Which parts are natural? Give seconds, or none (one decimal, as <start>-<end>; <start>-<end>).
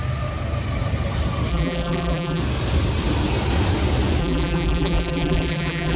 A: 0.0-1.5; 2.4-4.2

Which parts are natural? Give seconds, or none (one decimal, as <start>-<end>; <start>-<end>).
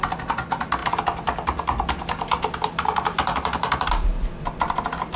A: 0.0-5.2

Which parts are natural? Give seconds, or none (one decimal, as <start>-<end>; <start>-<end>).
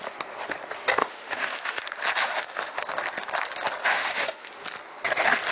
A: 0.0-1.0; 1.8-2.2; 2.8-3.8; 4.5-5.5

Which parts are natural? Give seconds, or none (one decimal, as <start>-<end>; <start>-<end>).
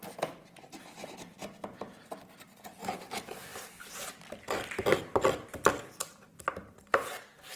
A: 0.0-7.6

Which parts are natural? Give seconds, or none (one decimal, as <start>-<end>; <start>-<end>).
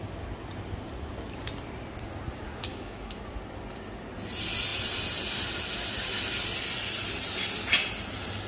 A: 0.0-2.7; 3.2-8.5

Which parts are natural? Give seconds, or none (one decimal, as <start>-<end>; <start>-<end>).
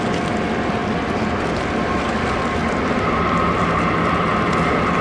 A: 0.0-5.0